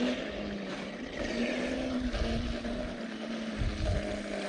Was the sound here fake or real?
real